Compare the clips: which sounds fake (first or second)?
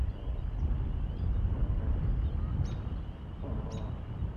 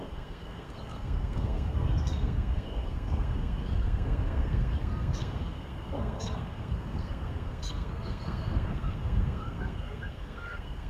second